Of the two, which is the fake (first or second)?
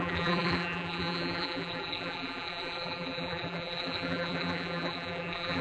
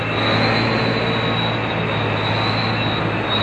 first